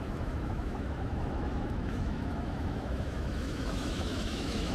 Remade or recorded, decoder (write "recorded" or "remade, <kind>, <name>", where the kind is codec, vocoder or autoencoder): remade, autoencoder, DAC-VAE